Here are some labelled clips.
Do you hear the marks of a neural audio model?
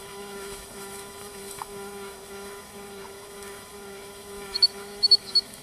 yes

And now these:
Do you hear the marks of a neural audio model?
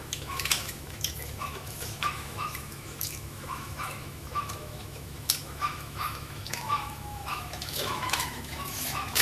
yes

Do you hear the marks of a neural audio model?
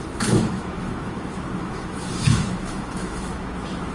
yes